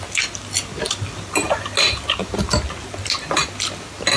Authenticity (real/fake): real